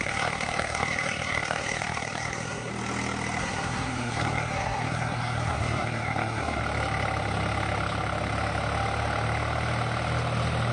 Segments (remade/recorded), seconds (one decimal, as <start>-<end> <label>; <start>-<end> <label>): 0.0-2.7 remade; 2.7-3.4 recorded; 3.4-6.6 remade; 6.6-10.7 recorded